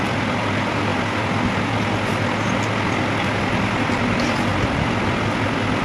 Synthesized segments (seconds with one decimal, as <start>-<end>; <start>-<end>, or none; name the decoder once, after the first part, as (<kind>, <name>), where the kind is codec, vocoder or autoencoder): none